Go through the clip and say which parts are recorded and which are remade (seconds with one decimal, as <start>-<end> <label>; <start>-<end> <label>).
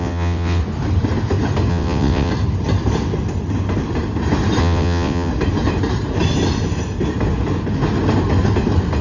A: 0.0-0.6 remade; 0.6-1.7 recorded; 1.7-2.3 remade; 2.3-4.6 recorded; 4.6-5.3 remade; 5.3-9.0 recorded